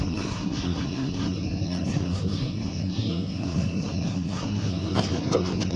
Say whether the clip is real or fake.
fake